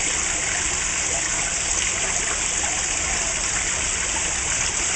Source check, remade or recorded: recorded